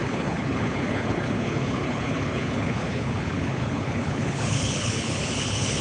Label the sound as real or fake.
fake